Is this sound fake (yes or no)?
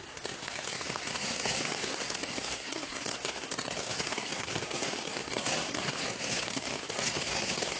yes